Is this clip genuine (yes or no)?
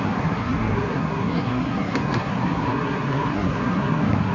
no